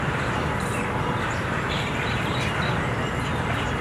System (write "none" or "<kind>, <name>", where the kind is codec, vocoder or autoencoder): vocoder, BigVGAN v2